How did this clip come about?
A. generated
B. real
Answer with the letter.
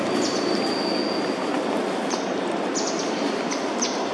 B